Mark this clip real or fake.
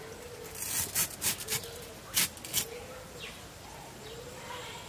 real